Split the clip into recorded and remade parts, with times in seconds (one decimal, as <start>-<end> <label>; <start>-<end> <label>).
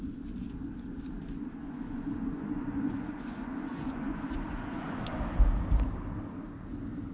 0.0-1.6 recorded; 1.6-5.2 remade; 5.2-7.1 recorded